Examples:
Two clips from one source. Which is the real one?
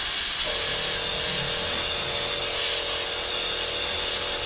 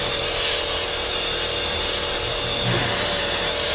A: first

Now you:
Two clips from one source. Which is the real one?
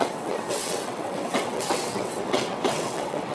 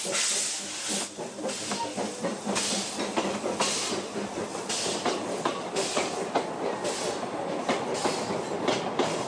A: second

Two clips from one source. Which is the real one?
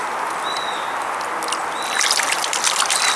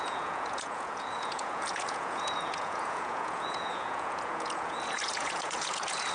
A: first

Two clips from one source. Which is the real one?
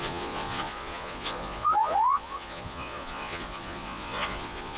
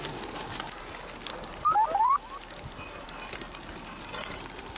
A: second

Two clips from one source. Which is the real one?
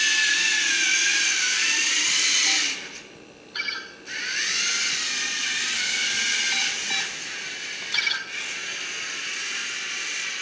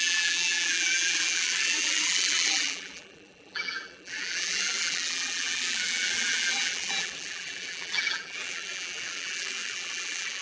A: first